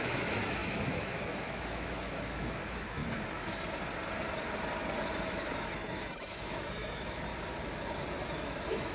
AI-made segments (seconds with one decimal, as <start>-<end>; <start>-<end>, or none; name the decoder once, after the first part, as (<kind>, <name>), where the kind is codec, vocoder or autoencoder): 0.0-3.0 (autoencoder, DAC-VAE); 5.3-7.3; 8.1-8.9